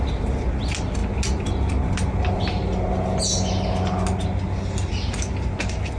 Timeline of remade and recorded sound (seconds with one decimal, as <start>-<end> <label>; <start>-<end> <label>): 0.0-6.0 recorded